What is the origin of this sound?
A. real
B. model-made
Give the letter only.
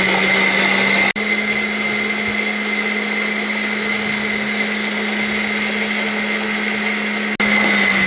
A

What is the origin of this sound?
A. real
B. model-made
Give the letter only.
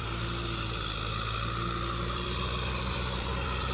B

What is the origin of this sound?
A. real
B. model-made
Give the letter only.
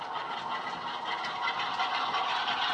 A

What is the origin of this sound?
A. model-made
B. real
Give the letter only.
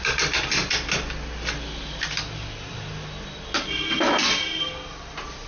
B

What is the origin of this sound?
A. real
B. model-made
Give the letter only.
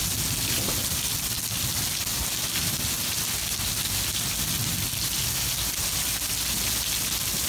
A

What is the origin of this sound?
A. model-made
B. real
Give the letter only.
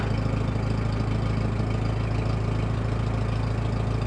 B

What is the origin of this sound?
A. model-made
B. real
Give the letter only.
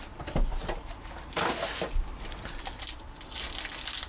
B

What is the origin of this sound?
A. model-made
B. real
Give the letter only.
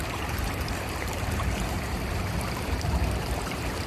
A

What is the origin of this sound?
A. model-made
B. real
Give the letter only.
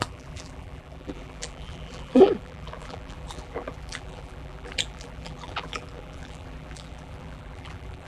A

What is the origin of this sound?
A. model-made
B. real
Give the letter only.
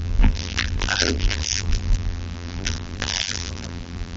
A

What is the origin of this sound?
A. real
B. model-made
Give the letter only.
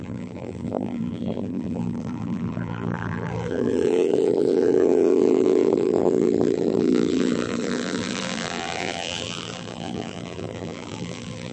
B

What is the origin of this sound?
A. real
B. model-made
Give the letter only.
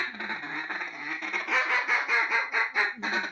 A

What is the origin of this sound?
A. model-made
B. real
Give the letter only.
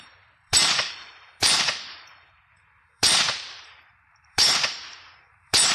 A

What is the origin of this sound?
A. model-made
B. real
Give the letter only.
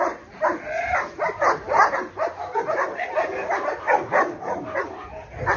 B